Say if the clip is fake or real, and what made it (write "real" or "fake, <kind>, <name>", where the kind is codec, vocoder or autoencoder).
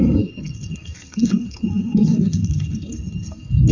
fake, codec, SNAC